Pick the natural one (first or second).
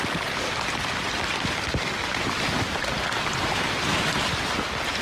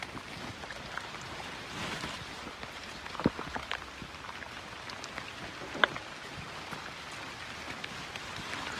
second